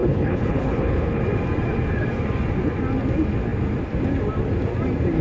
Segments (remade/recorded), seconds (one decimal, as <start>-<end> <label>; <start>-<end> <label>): 0.0-1.2 remade; 1.2-5.2 recorded